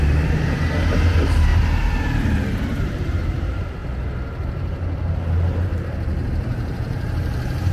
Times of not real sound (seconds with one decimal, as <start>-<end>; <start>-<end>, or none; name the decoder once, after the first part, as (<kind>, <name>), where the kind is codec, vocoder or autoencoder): 0.0-1.5 (vocoder, BigVGAN v2); 2.8-3.8; 5.8-7.7